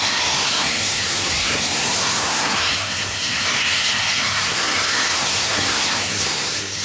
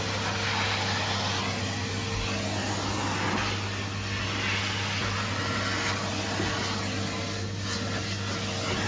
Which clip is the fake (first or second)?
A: first